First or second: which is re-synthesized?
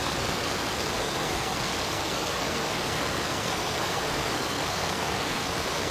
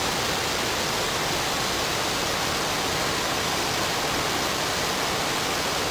first